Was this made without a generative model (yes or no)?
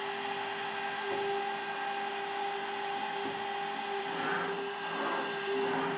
yes